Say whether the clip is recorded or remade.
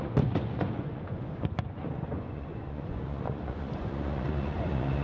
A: remade